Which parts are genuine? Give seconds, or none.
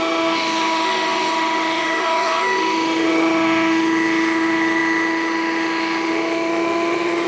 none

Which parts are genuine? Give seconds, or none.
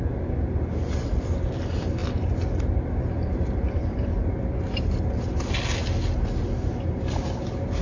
0.0-7.8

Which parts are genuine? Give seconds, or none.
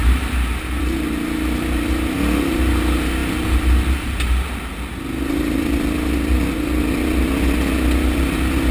0.0-8.7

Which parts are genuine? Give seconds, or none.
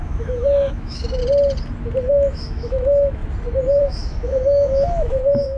1.2-2.1; 3.2-3.8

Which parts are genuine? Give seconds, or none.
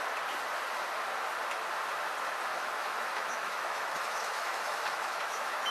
0.0-2.5